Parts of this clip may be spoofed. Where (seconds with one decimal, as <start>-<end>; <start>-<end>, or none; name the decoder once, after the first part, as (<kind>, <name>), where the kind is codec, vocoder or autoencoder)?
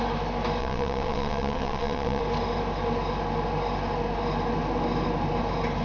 0.6-2.2 (vocoder, WaveNeXt)